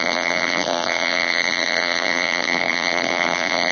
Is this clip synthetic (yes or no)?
yes